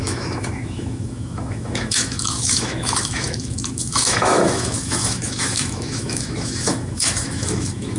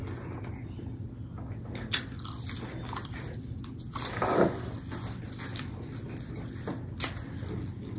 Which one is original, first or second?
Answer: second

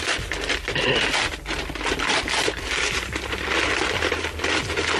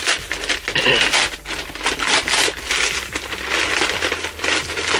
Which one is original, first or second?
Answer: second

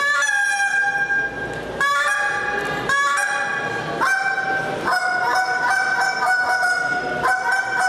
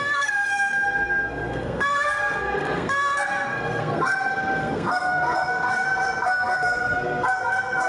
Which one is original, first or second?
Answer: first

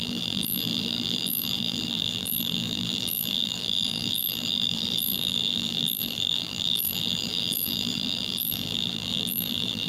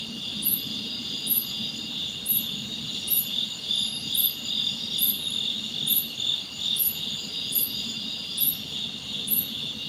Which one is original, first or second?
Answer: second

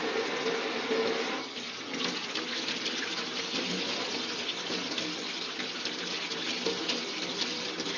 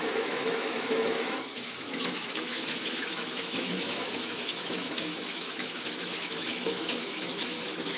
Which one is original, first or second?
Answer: first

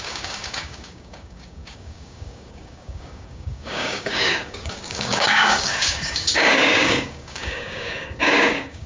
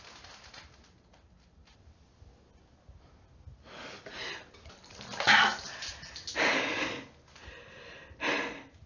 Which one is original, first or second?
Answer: second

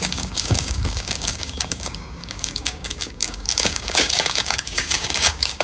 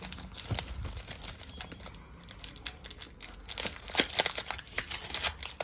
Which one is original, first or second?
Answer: second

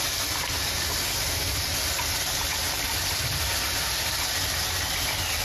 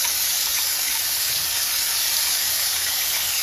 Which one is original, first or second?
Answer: first